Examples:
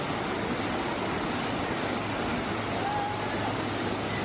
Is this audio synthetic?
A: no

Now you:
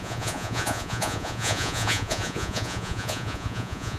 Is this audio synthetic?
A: yes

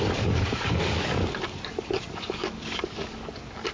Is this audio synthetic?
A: yes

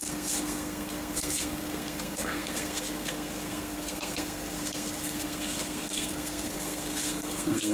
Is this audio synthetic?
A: yes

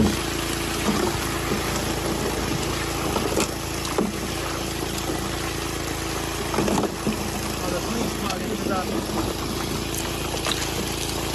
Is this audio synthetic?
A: no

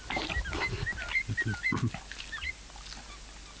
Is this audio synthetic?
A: no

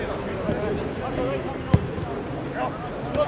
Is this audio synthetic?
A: no